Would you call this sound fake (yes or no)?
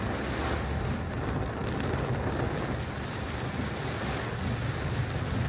no